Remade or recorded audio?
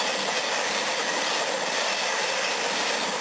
recorded